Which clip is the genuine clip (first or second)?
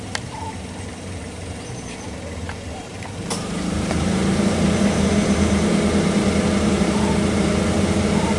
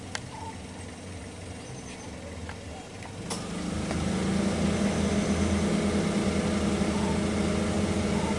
second